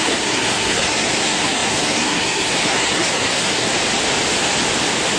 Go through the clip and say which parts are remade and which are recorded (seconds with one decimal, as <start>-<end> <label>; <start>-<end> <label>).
0.0-3.7 remade; 3.7-5.2 recorded